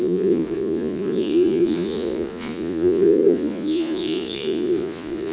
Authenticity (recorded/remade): remade